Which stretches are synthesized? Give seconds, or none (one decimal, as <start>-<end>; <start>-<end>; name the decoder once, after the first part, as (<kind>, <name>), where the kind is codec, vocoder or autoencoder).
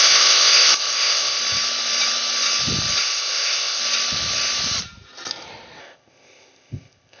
0.0-1.4 (codec, ZipCodec); 3.0-3.8; 5.8-7.2